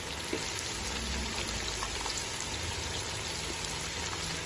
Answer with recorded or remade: recorded